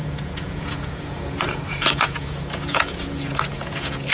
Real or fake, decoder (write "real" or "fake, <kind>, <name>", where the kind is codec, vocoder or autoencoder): fake, vocoder, Vocos